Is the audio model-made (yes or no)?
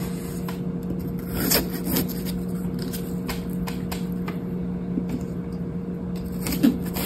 no